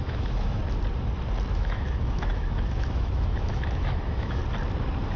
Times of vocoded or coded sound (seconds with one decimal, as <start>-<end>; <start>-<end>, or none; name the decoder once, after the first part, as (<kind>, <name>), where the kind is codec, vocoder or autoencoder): 0.0-0.6 (autoencoder, DAC-VAE); 1.5-4.4